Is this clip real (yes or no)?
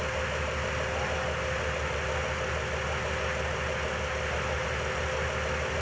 yes